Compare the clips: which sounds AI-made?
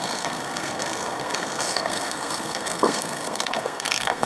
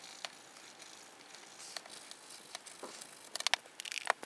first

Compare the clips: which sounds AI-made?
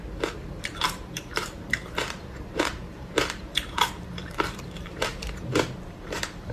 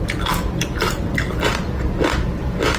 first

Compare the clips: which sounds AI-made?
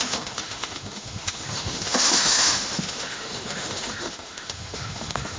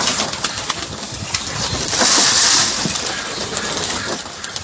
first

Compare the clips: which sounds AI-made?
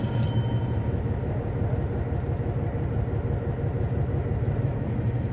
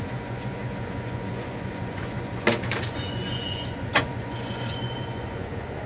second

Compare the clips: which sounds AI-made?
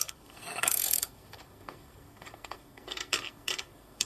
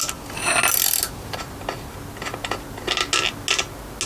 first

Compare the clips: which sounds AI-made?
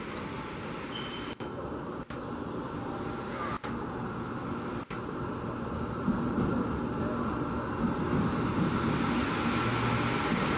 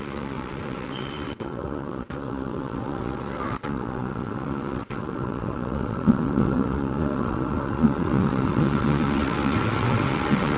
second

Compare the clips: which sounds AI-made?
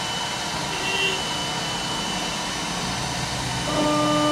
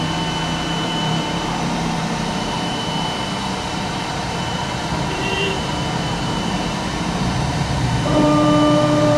second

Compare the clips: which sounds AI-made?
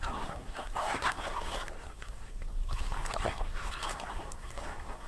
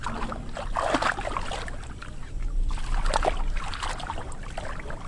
first